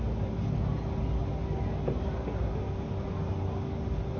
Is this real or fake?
real